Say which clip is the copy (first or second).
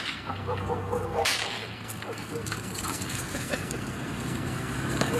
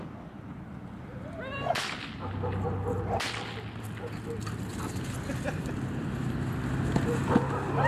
first